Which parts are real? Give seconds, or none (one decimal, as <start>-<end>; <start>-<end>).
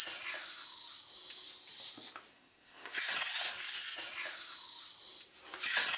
0.0-2.3; 3.1-6.0